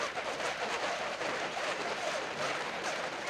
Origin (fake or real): real